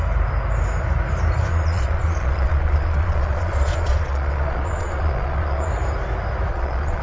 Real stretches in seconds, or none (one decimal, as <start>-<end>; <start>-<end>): 0.0-1.5; 5.7-6.5